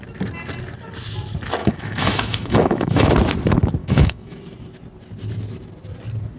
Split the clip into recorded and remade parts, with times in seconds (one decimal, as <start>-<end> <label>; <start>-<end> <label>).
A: 0.0-1.6 recorded; 1.6-3.1 remade; 3.1-3.8 recorded; 3.8-4.4 remade; 4.4-6.4 recorded